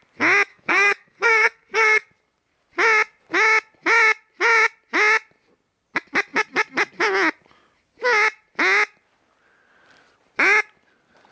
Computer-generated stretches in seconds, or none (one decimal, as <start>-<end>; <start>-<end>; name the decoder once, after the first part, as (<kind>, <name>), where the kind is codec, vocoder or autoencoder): 0.5-2.1 (codec, SNAC)